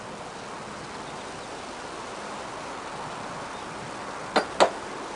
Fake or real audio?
real